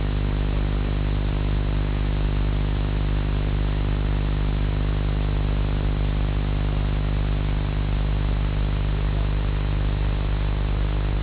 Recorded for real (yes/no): yes